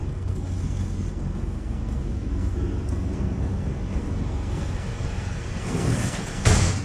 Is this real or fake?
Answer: fake